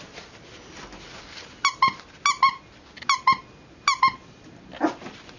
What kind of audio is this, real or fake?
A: real